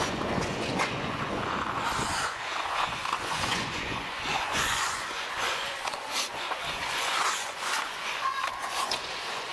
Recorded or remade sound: remade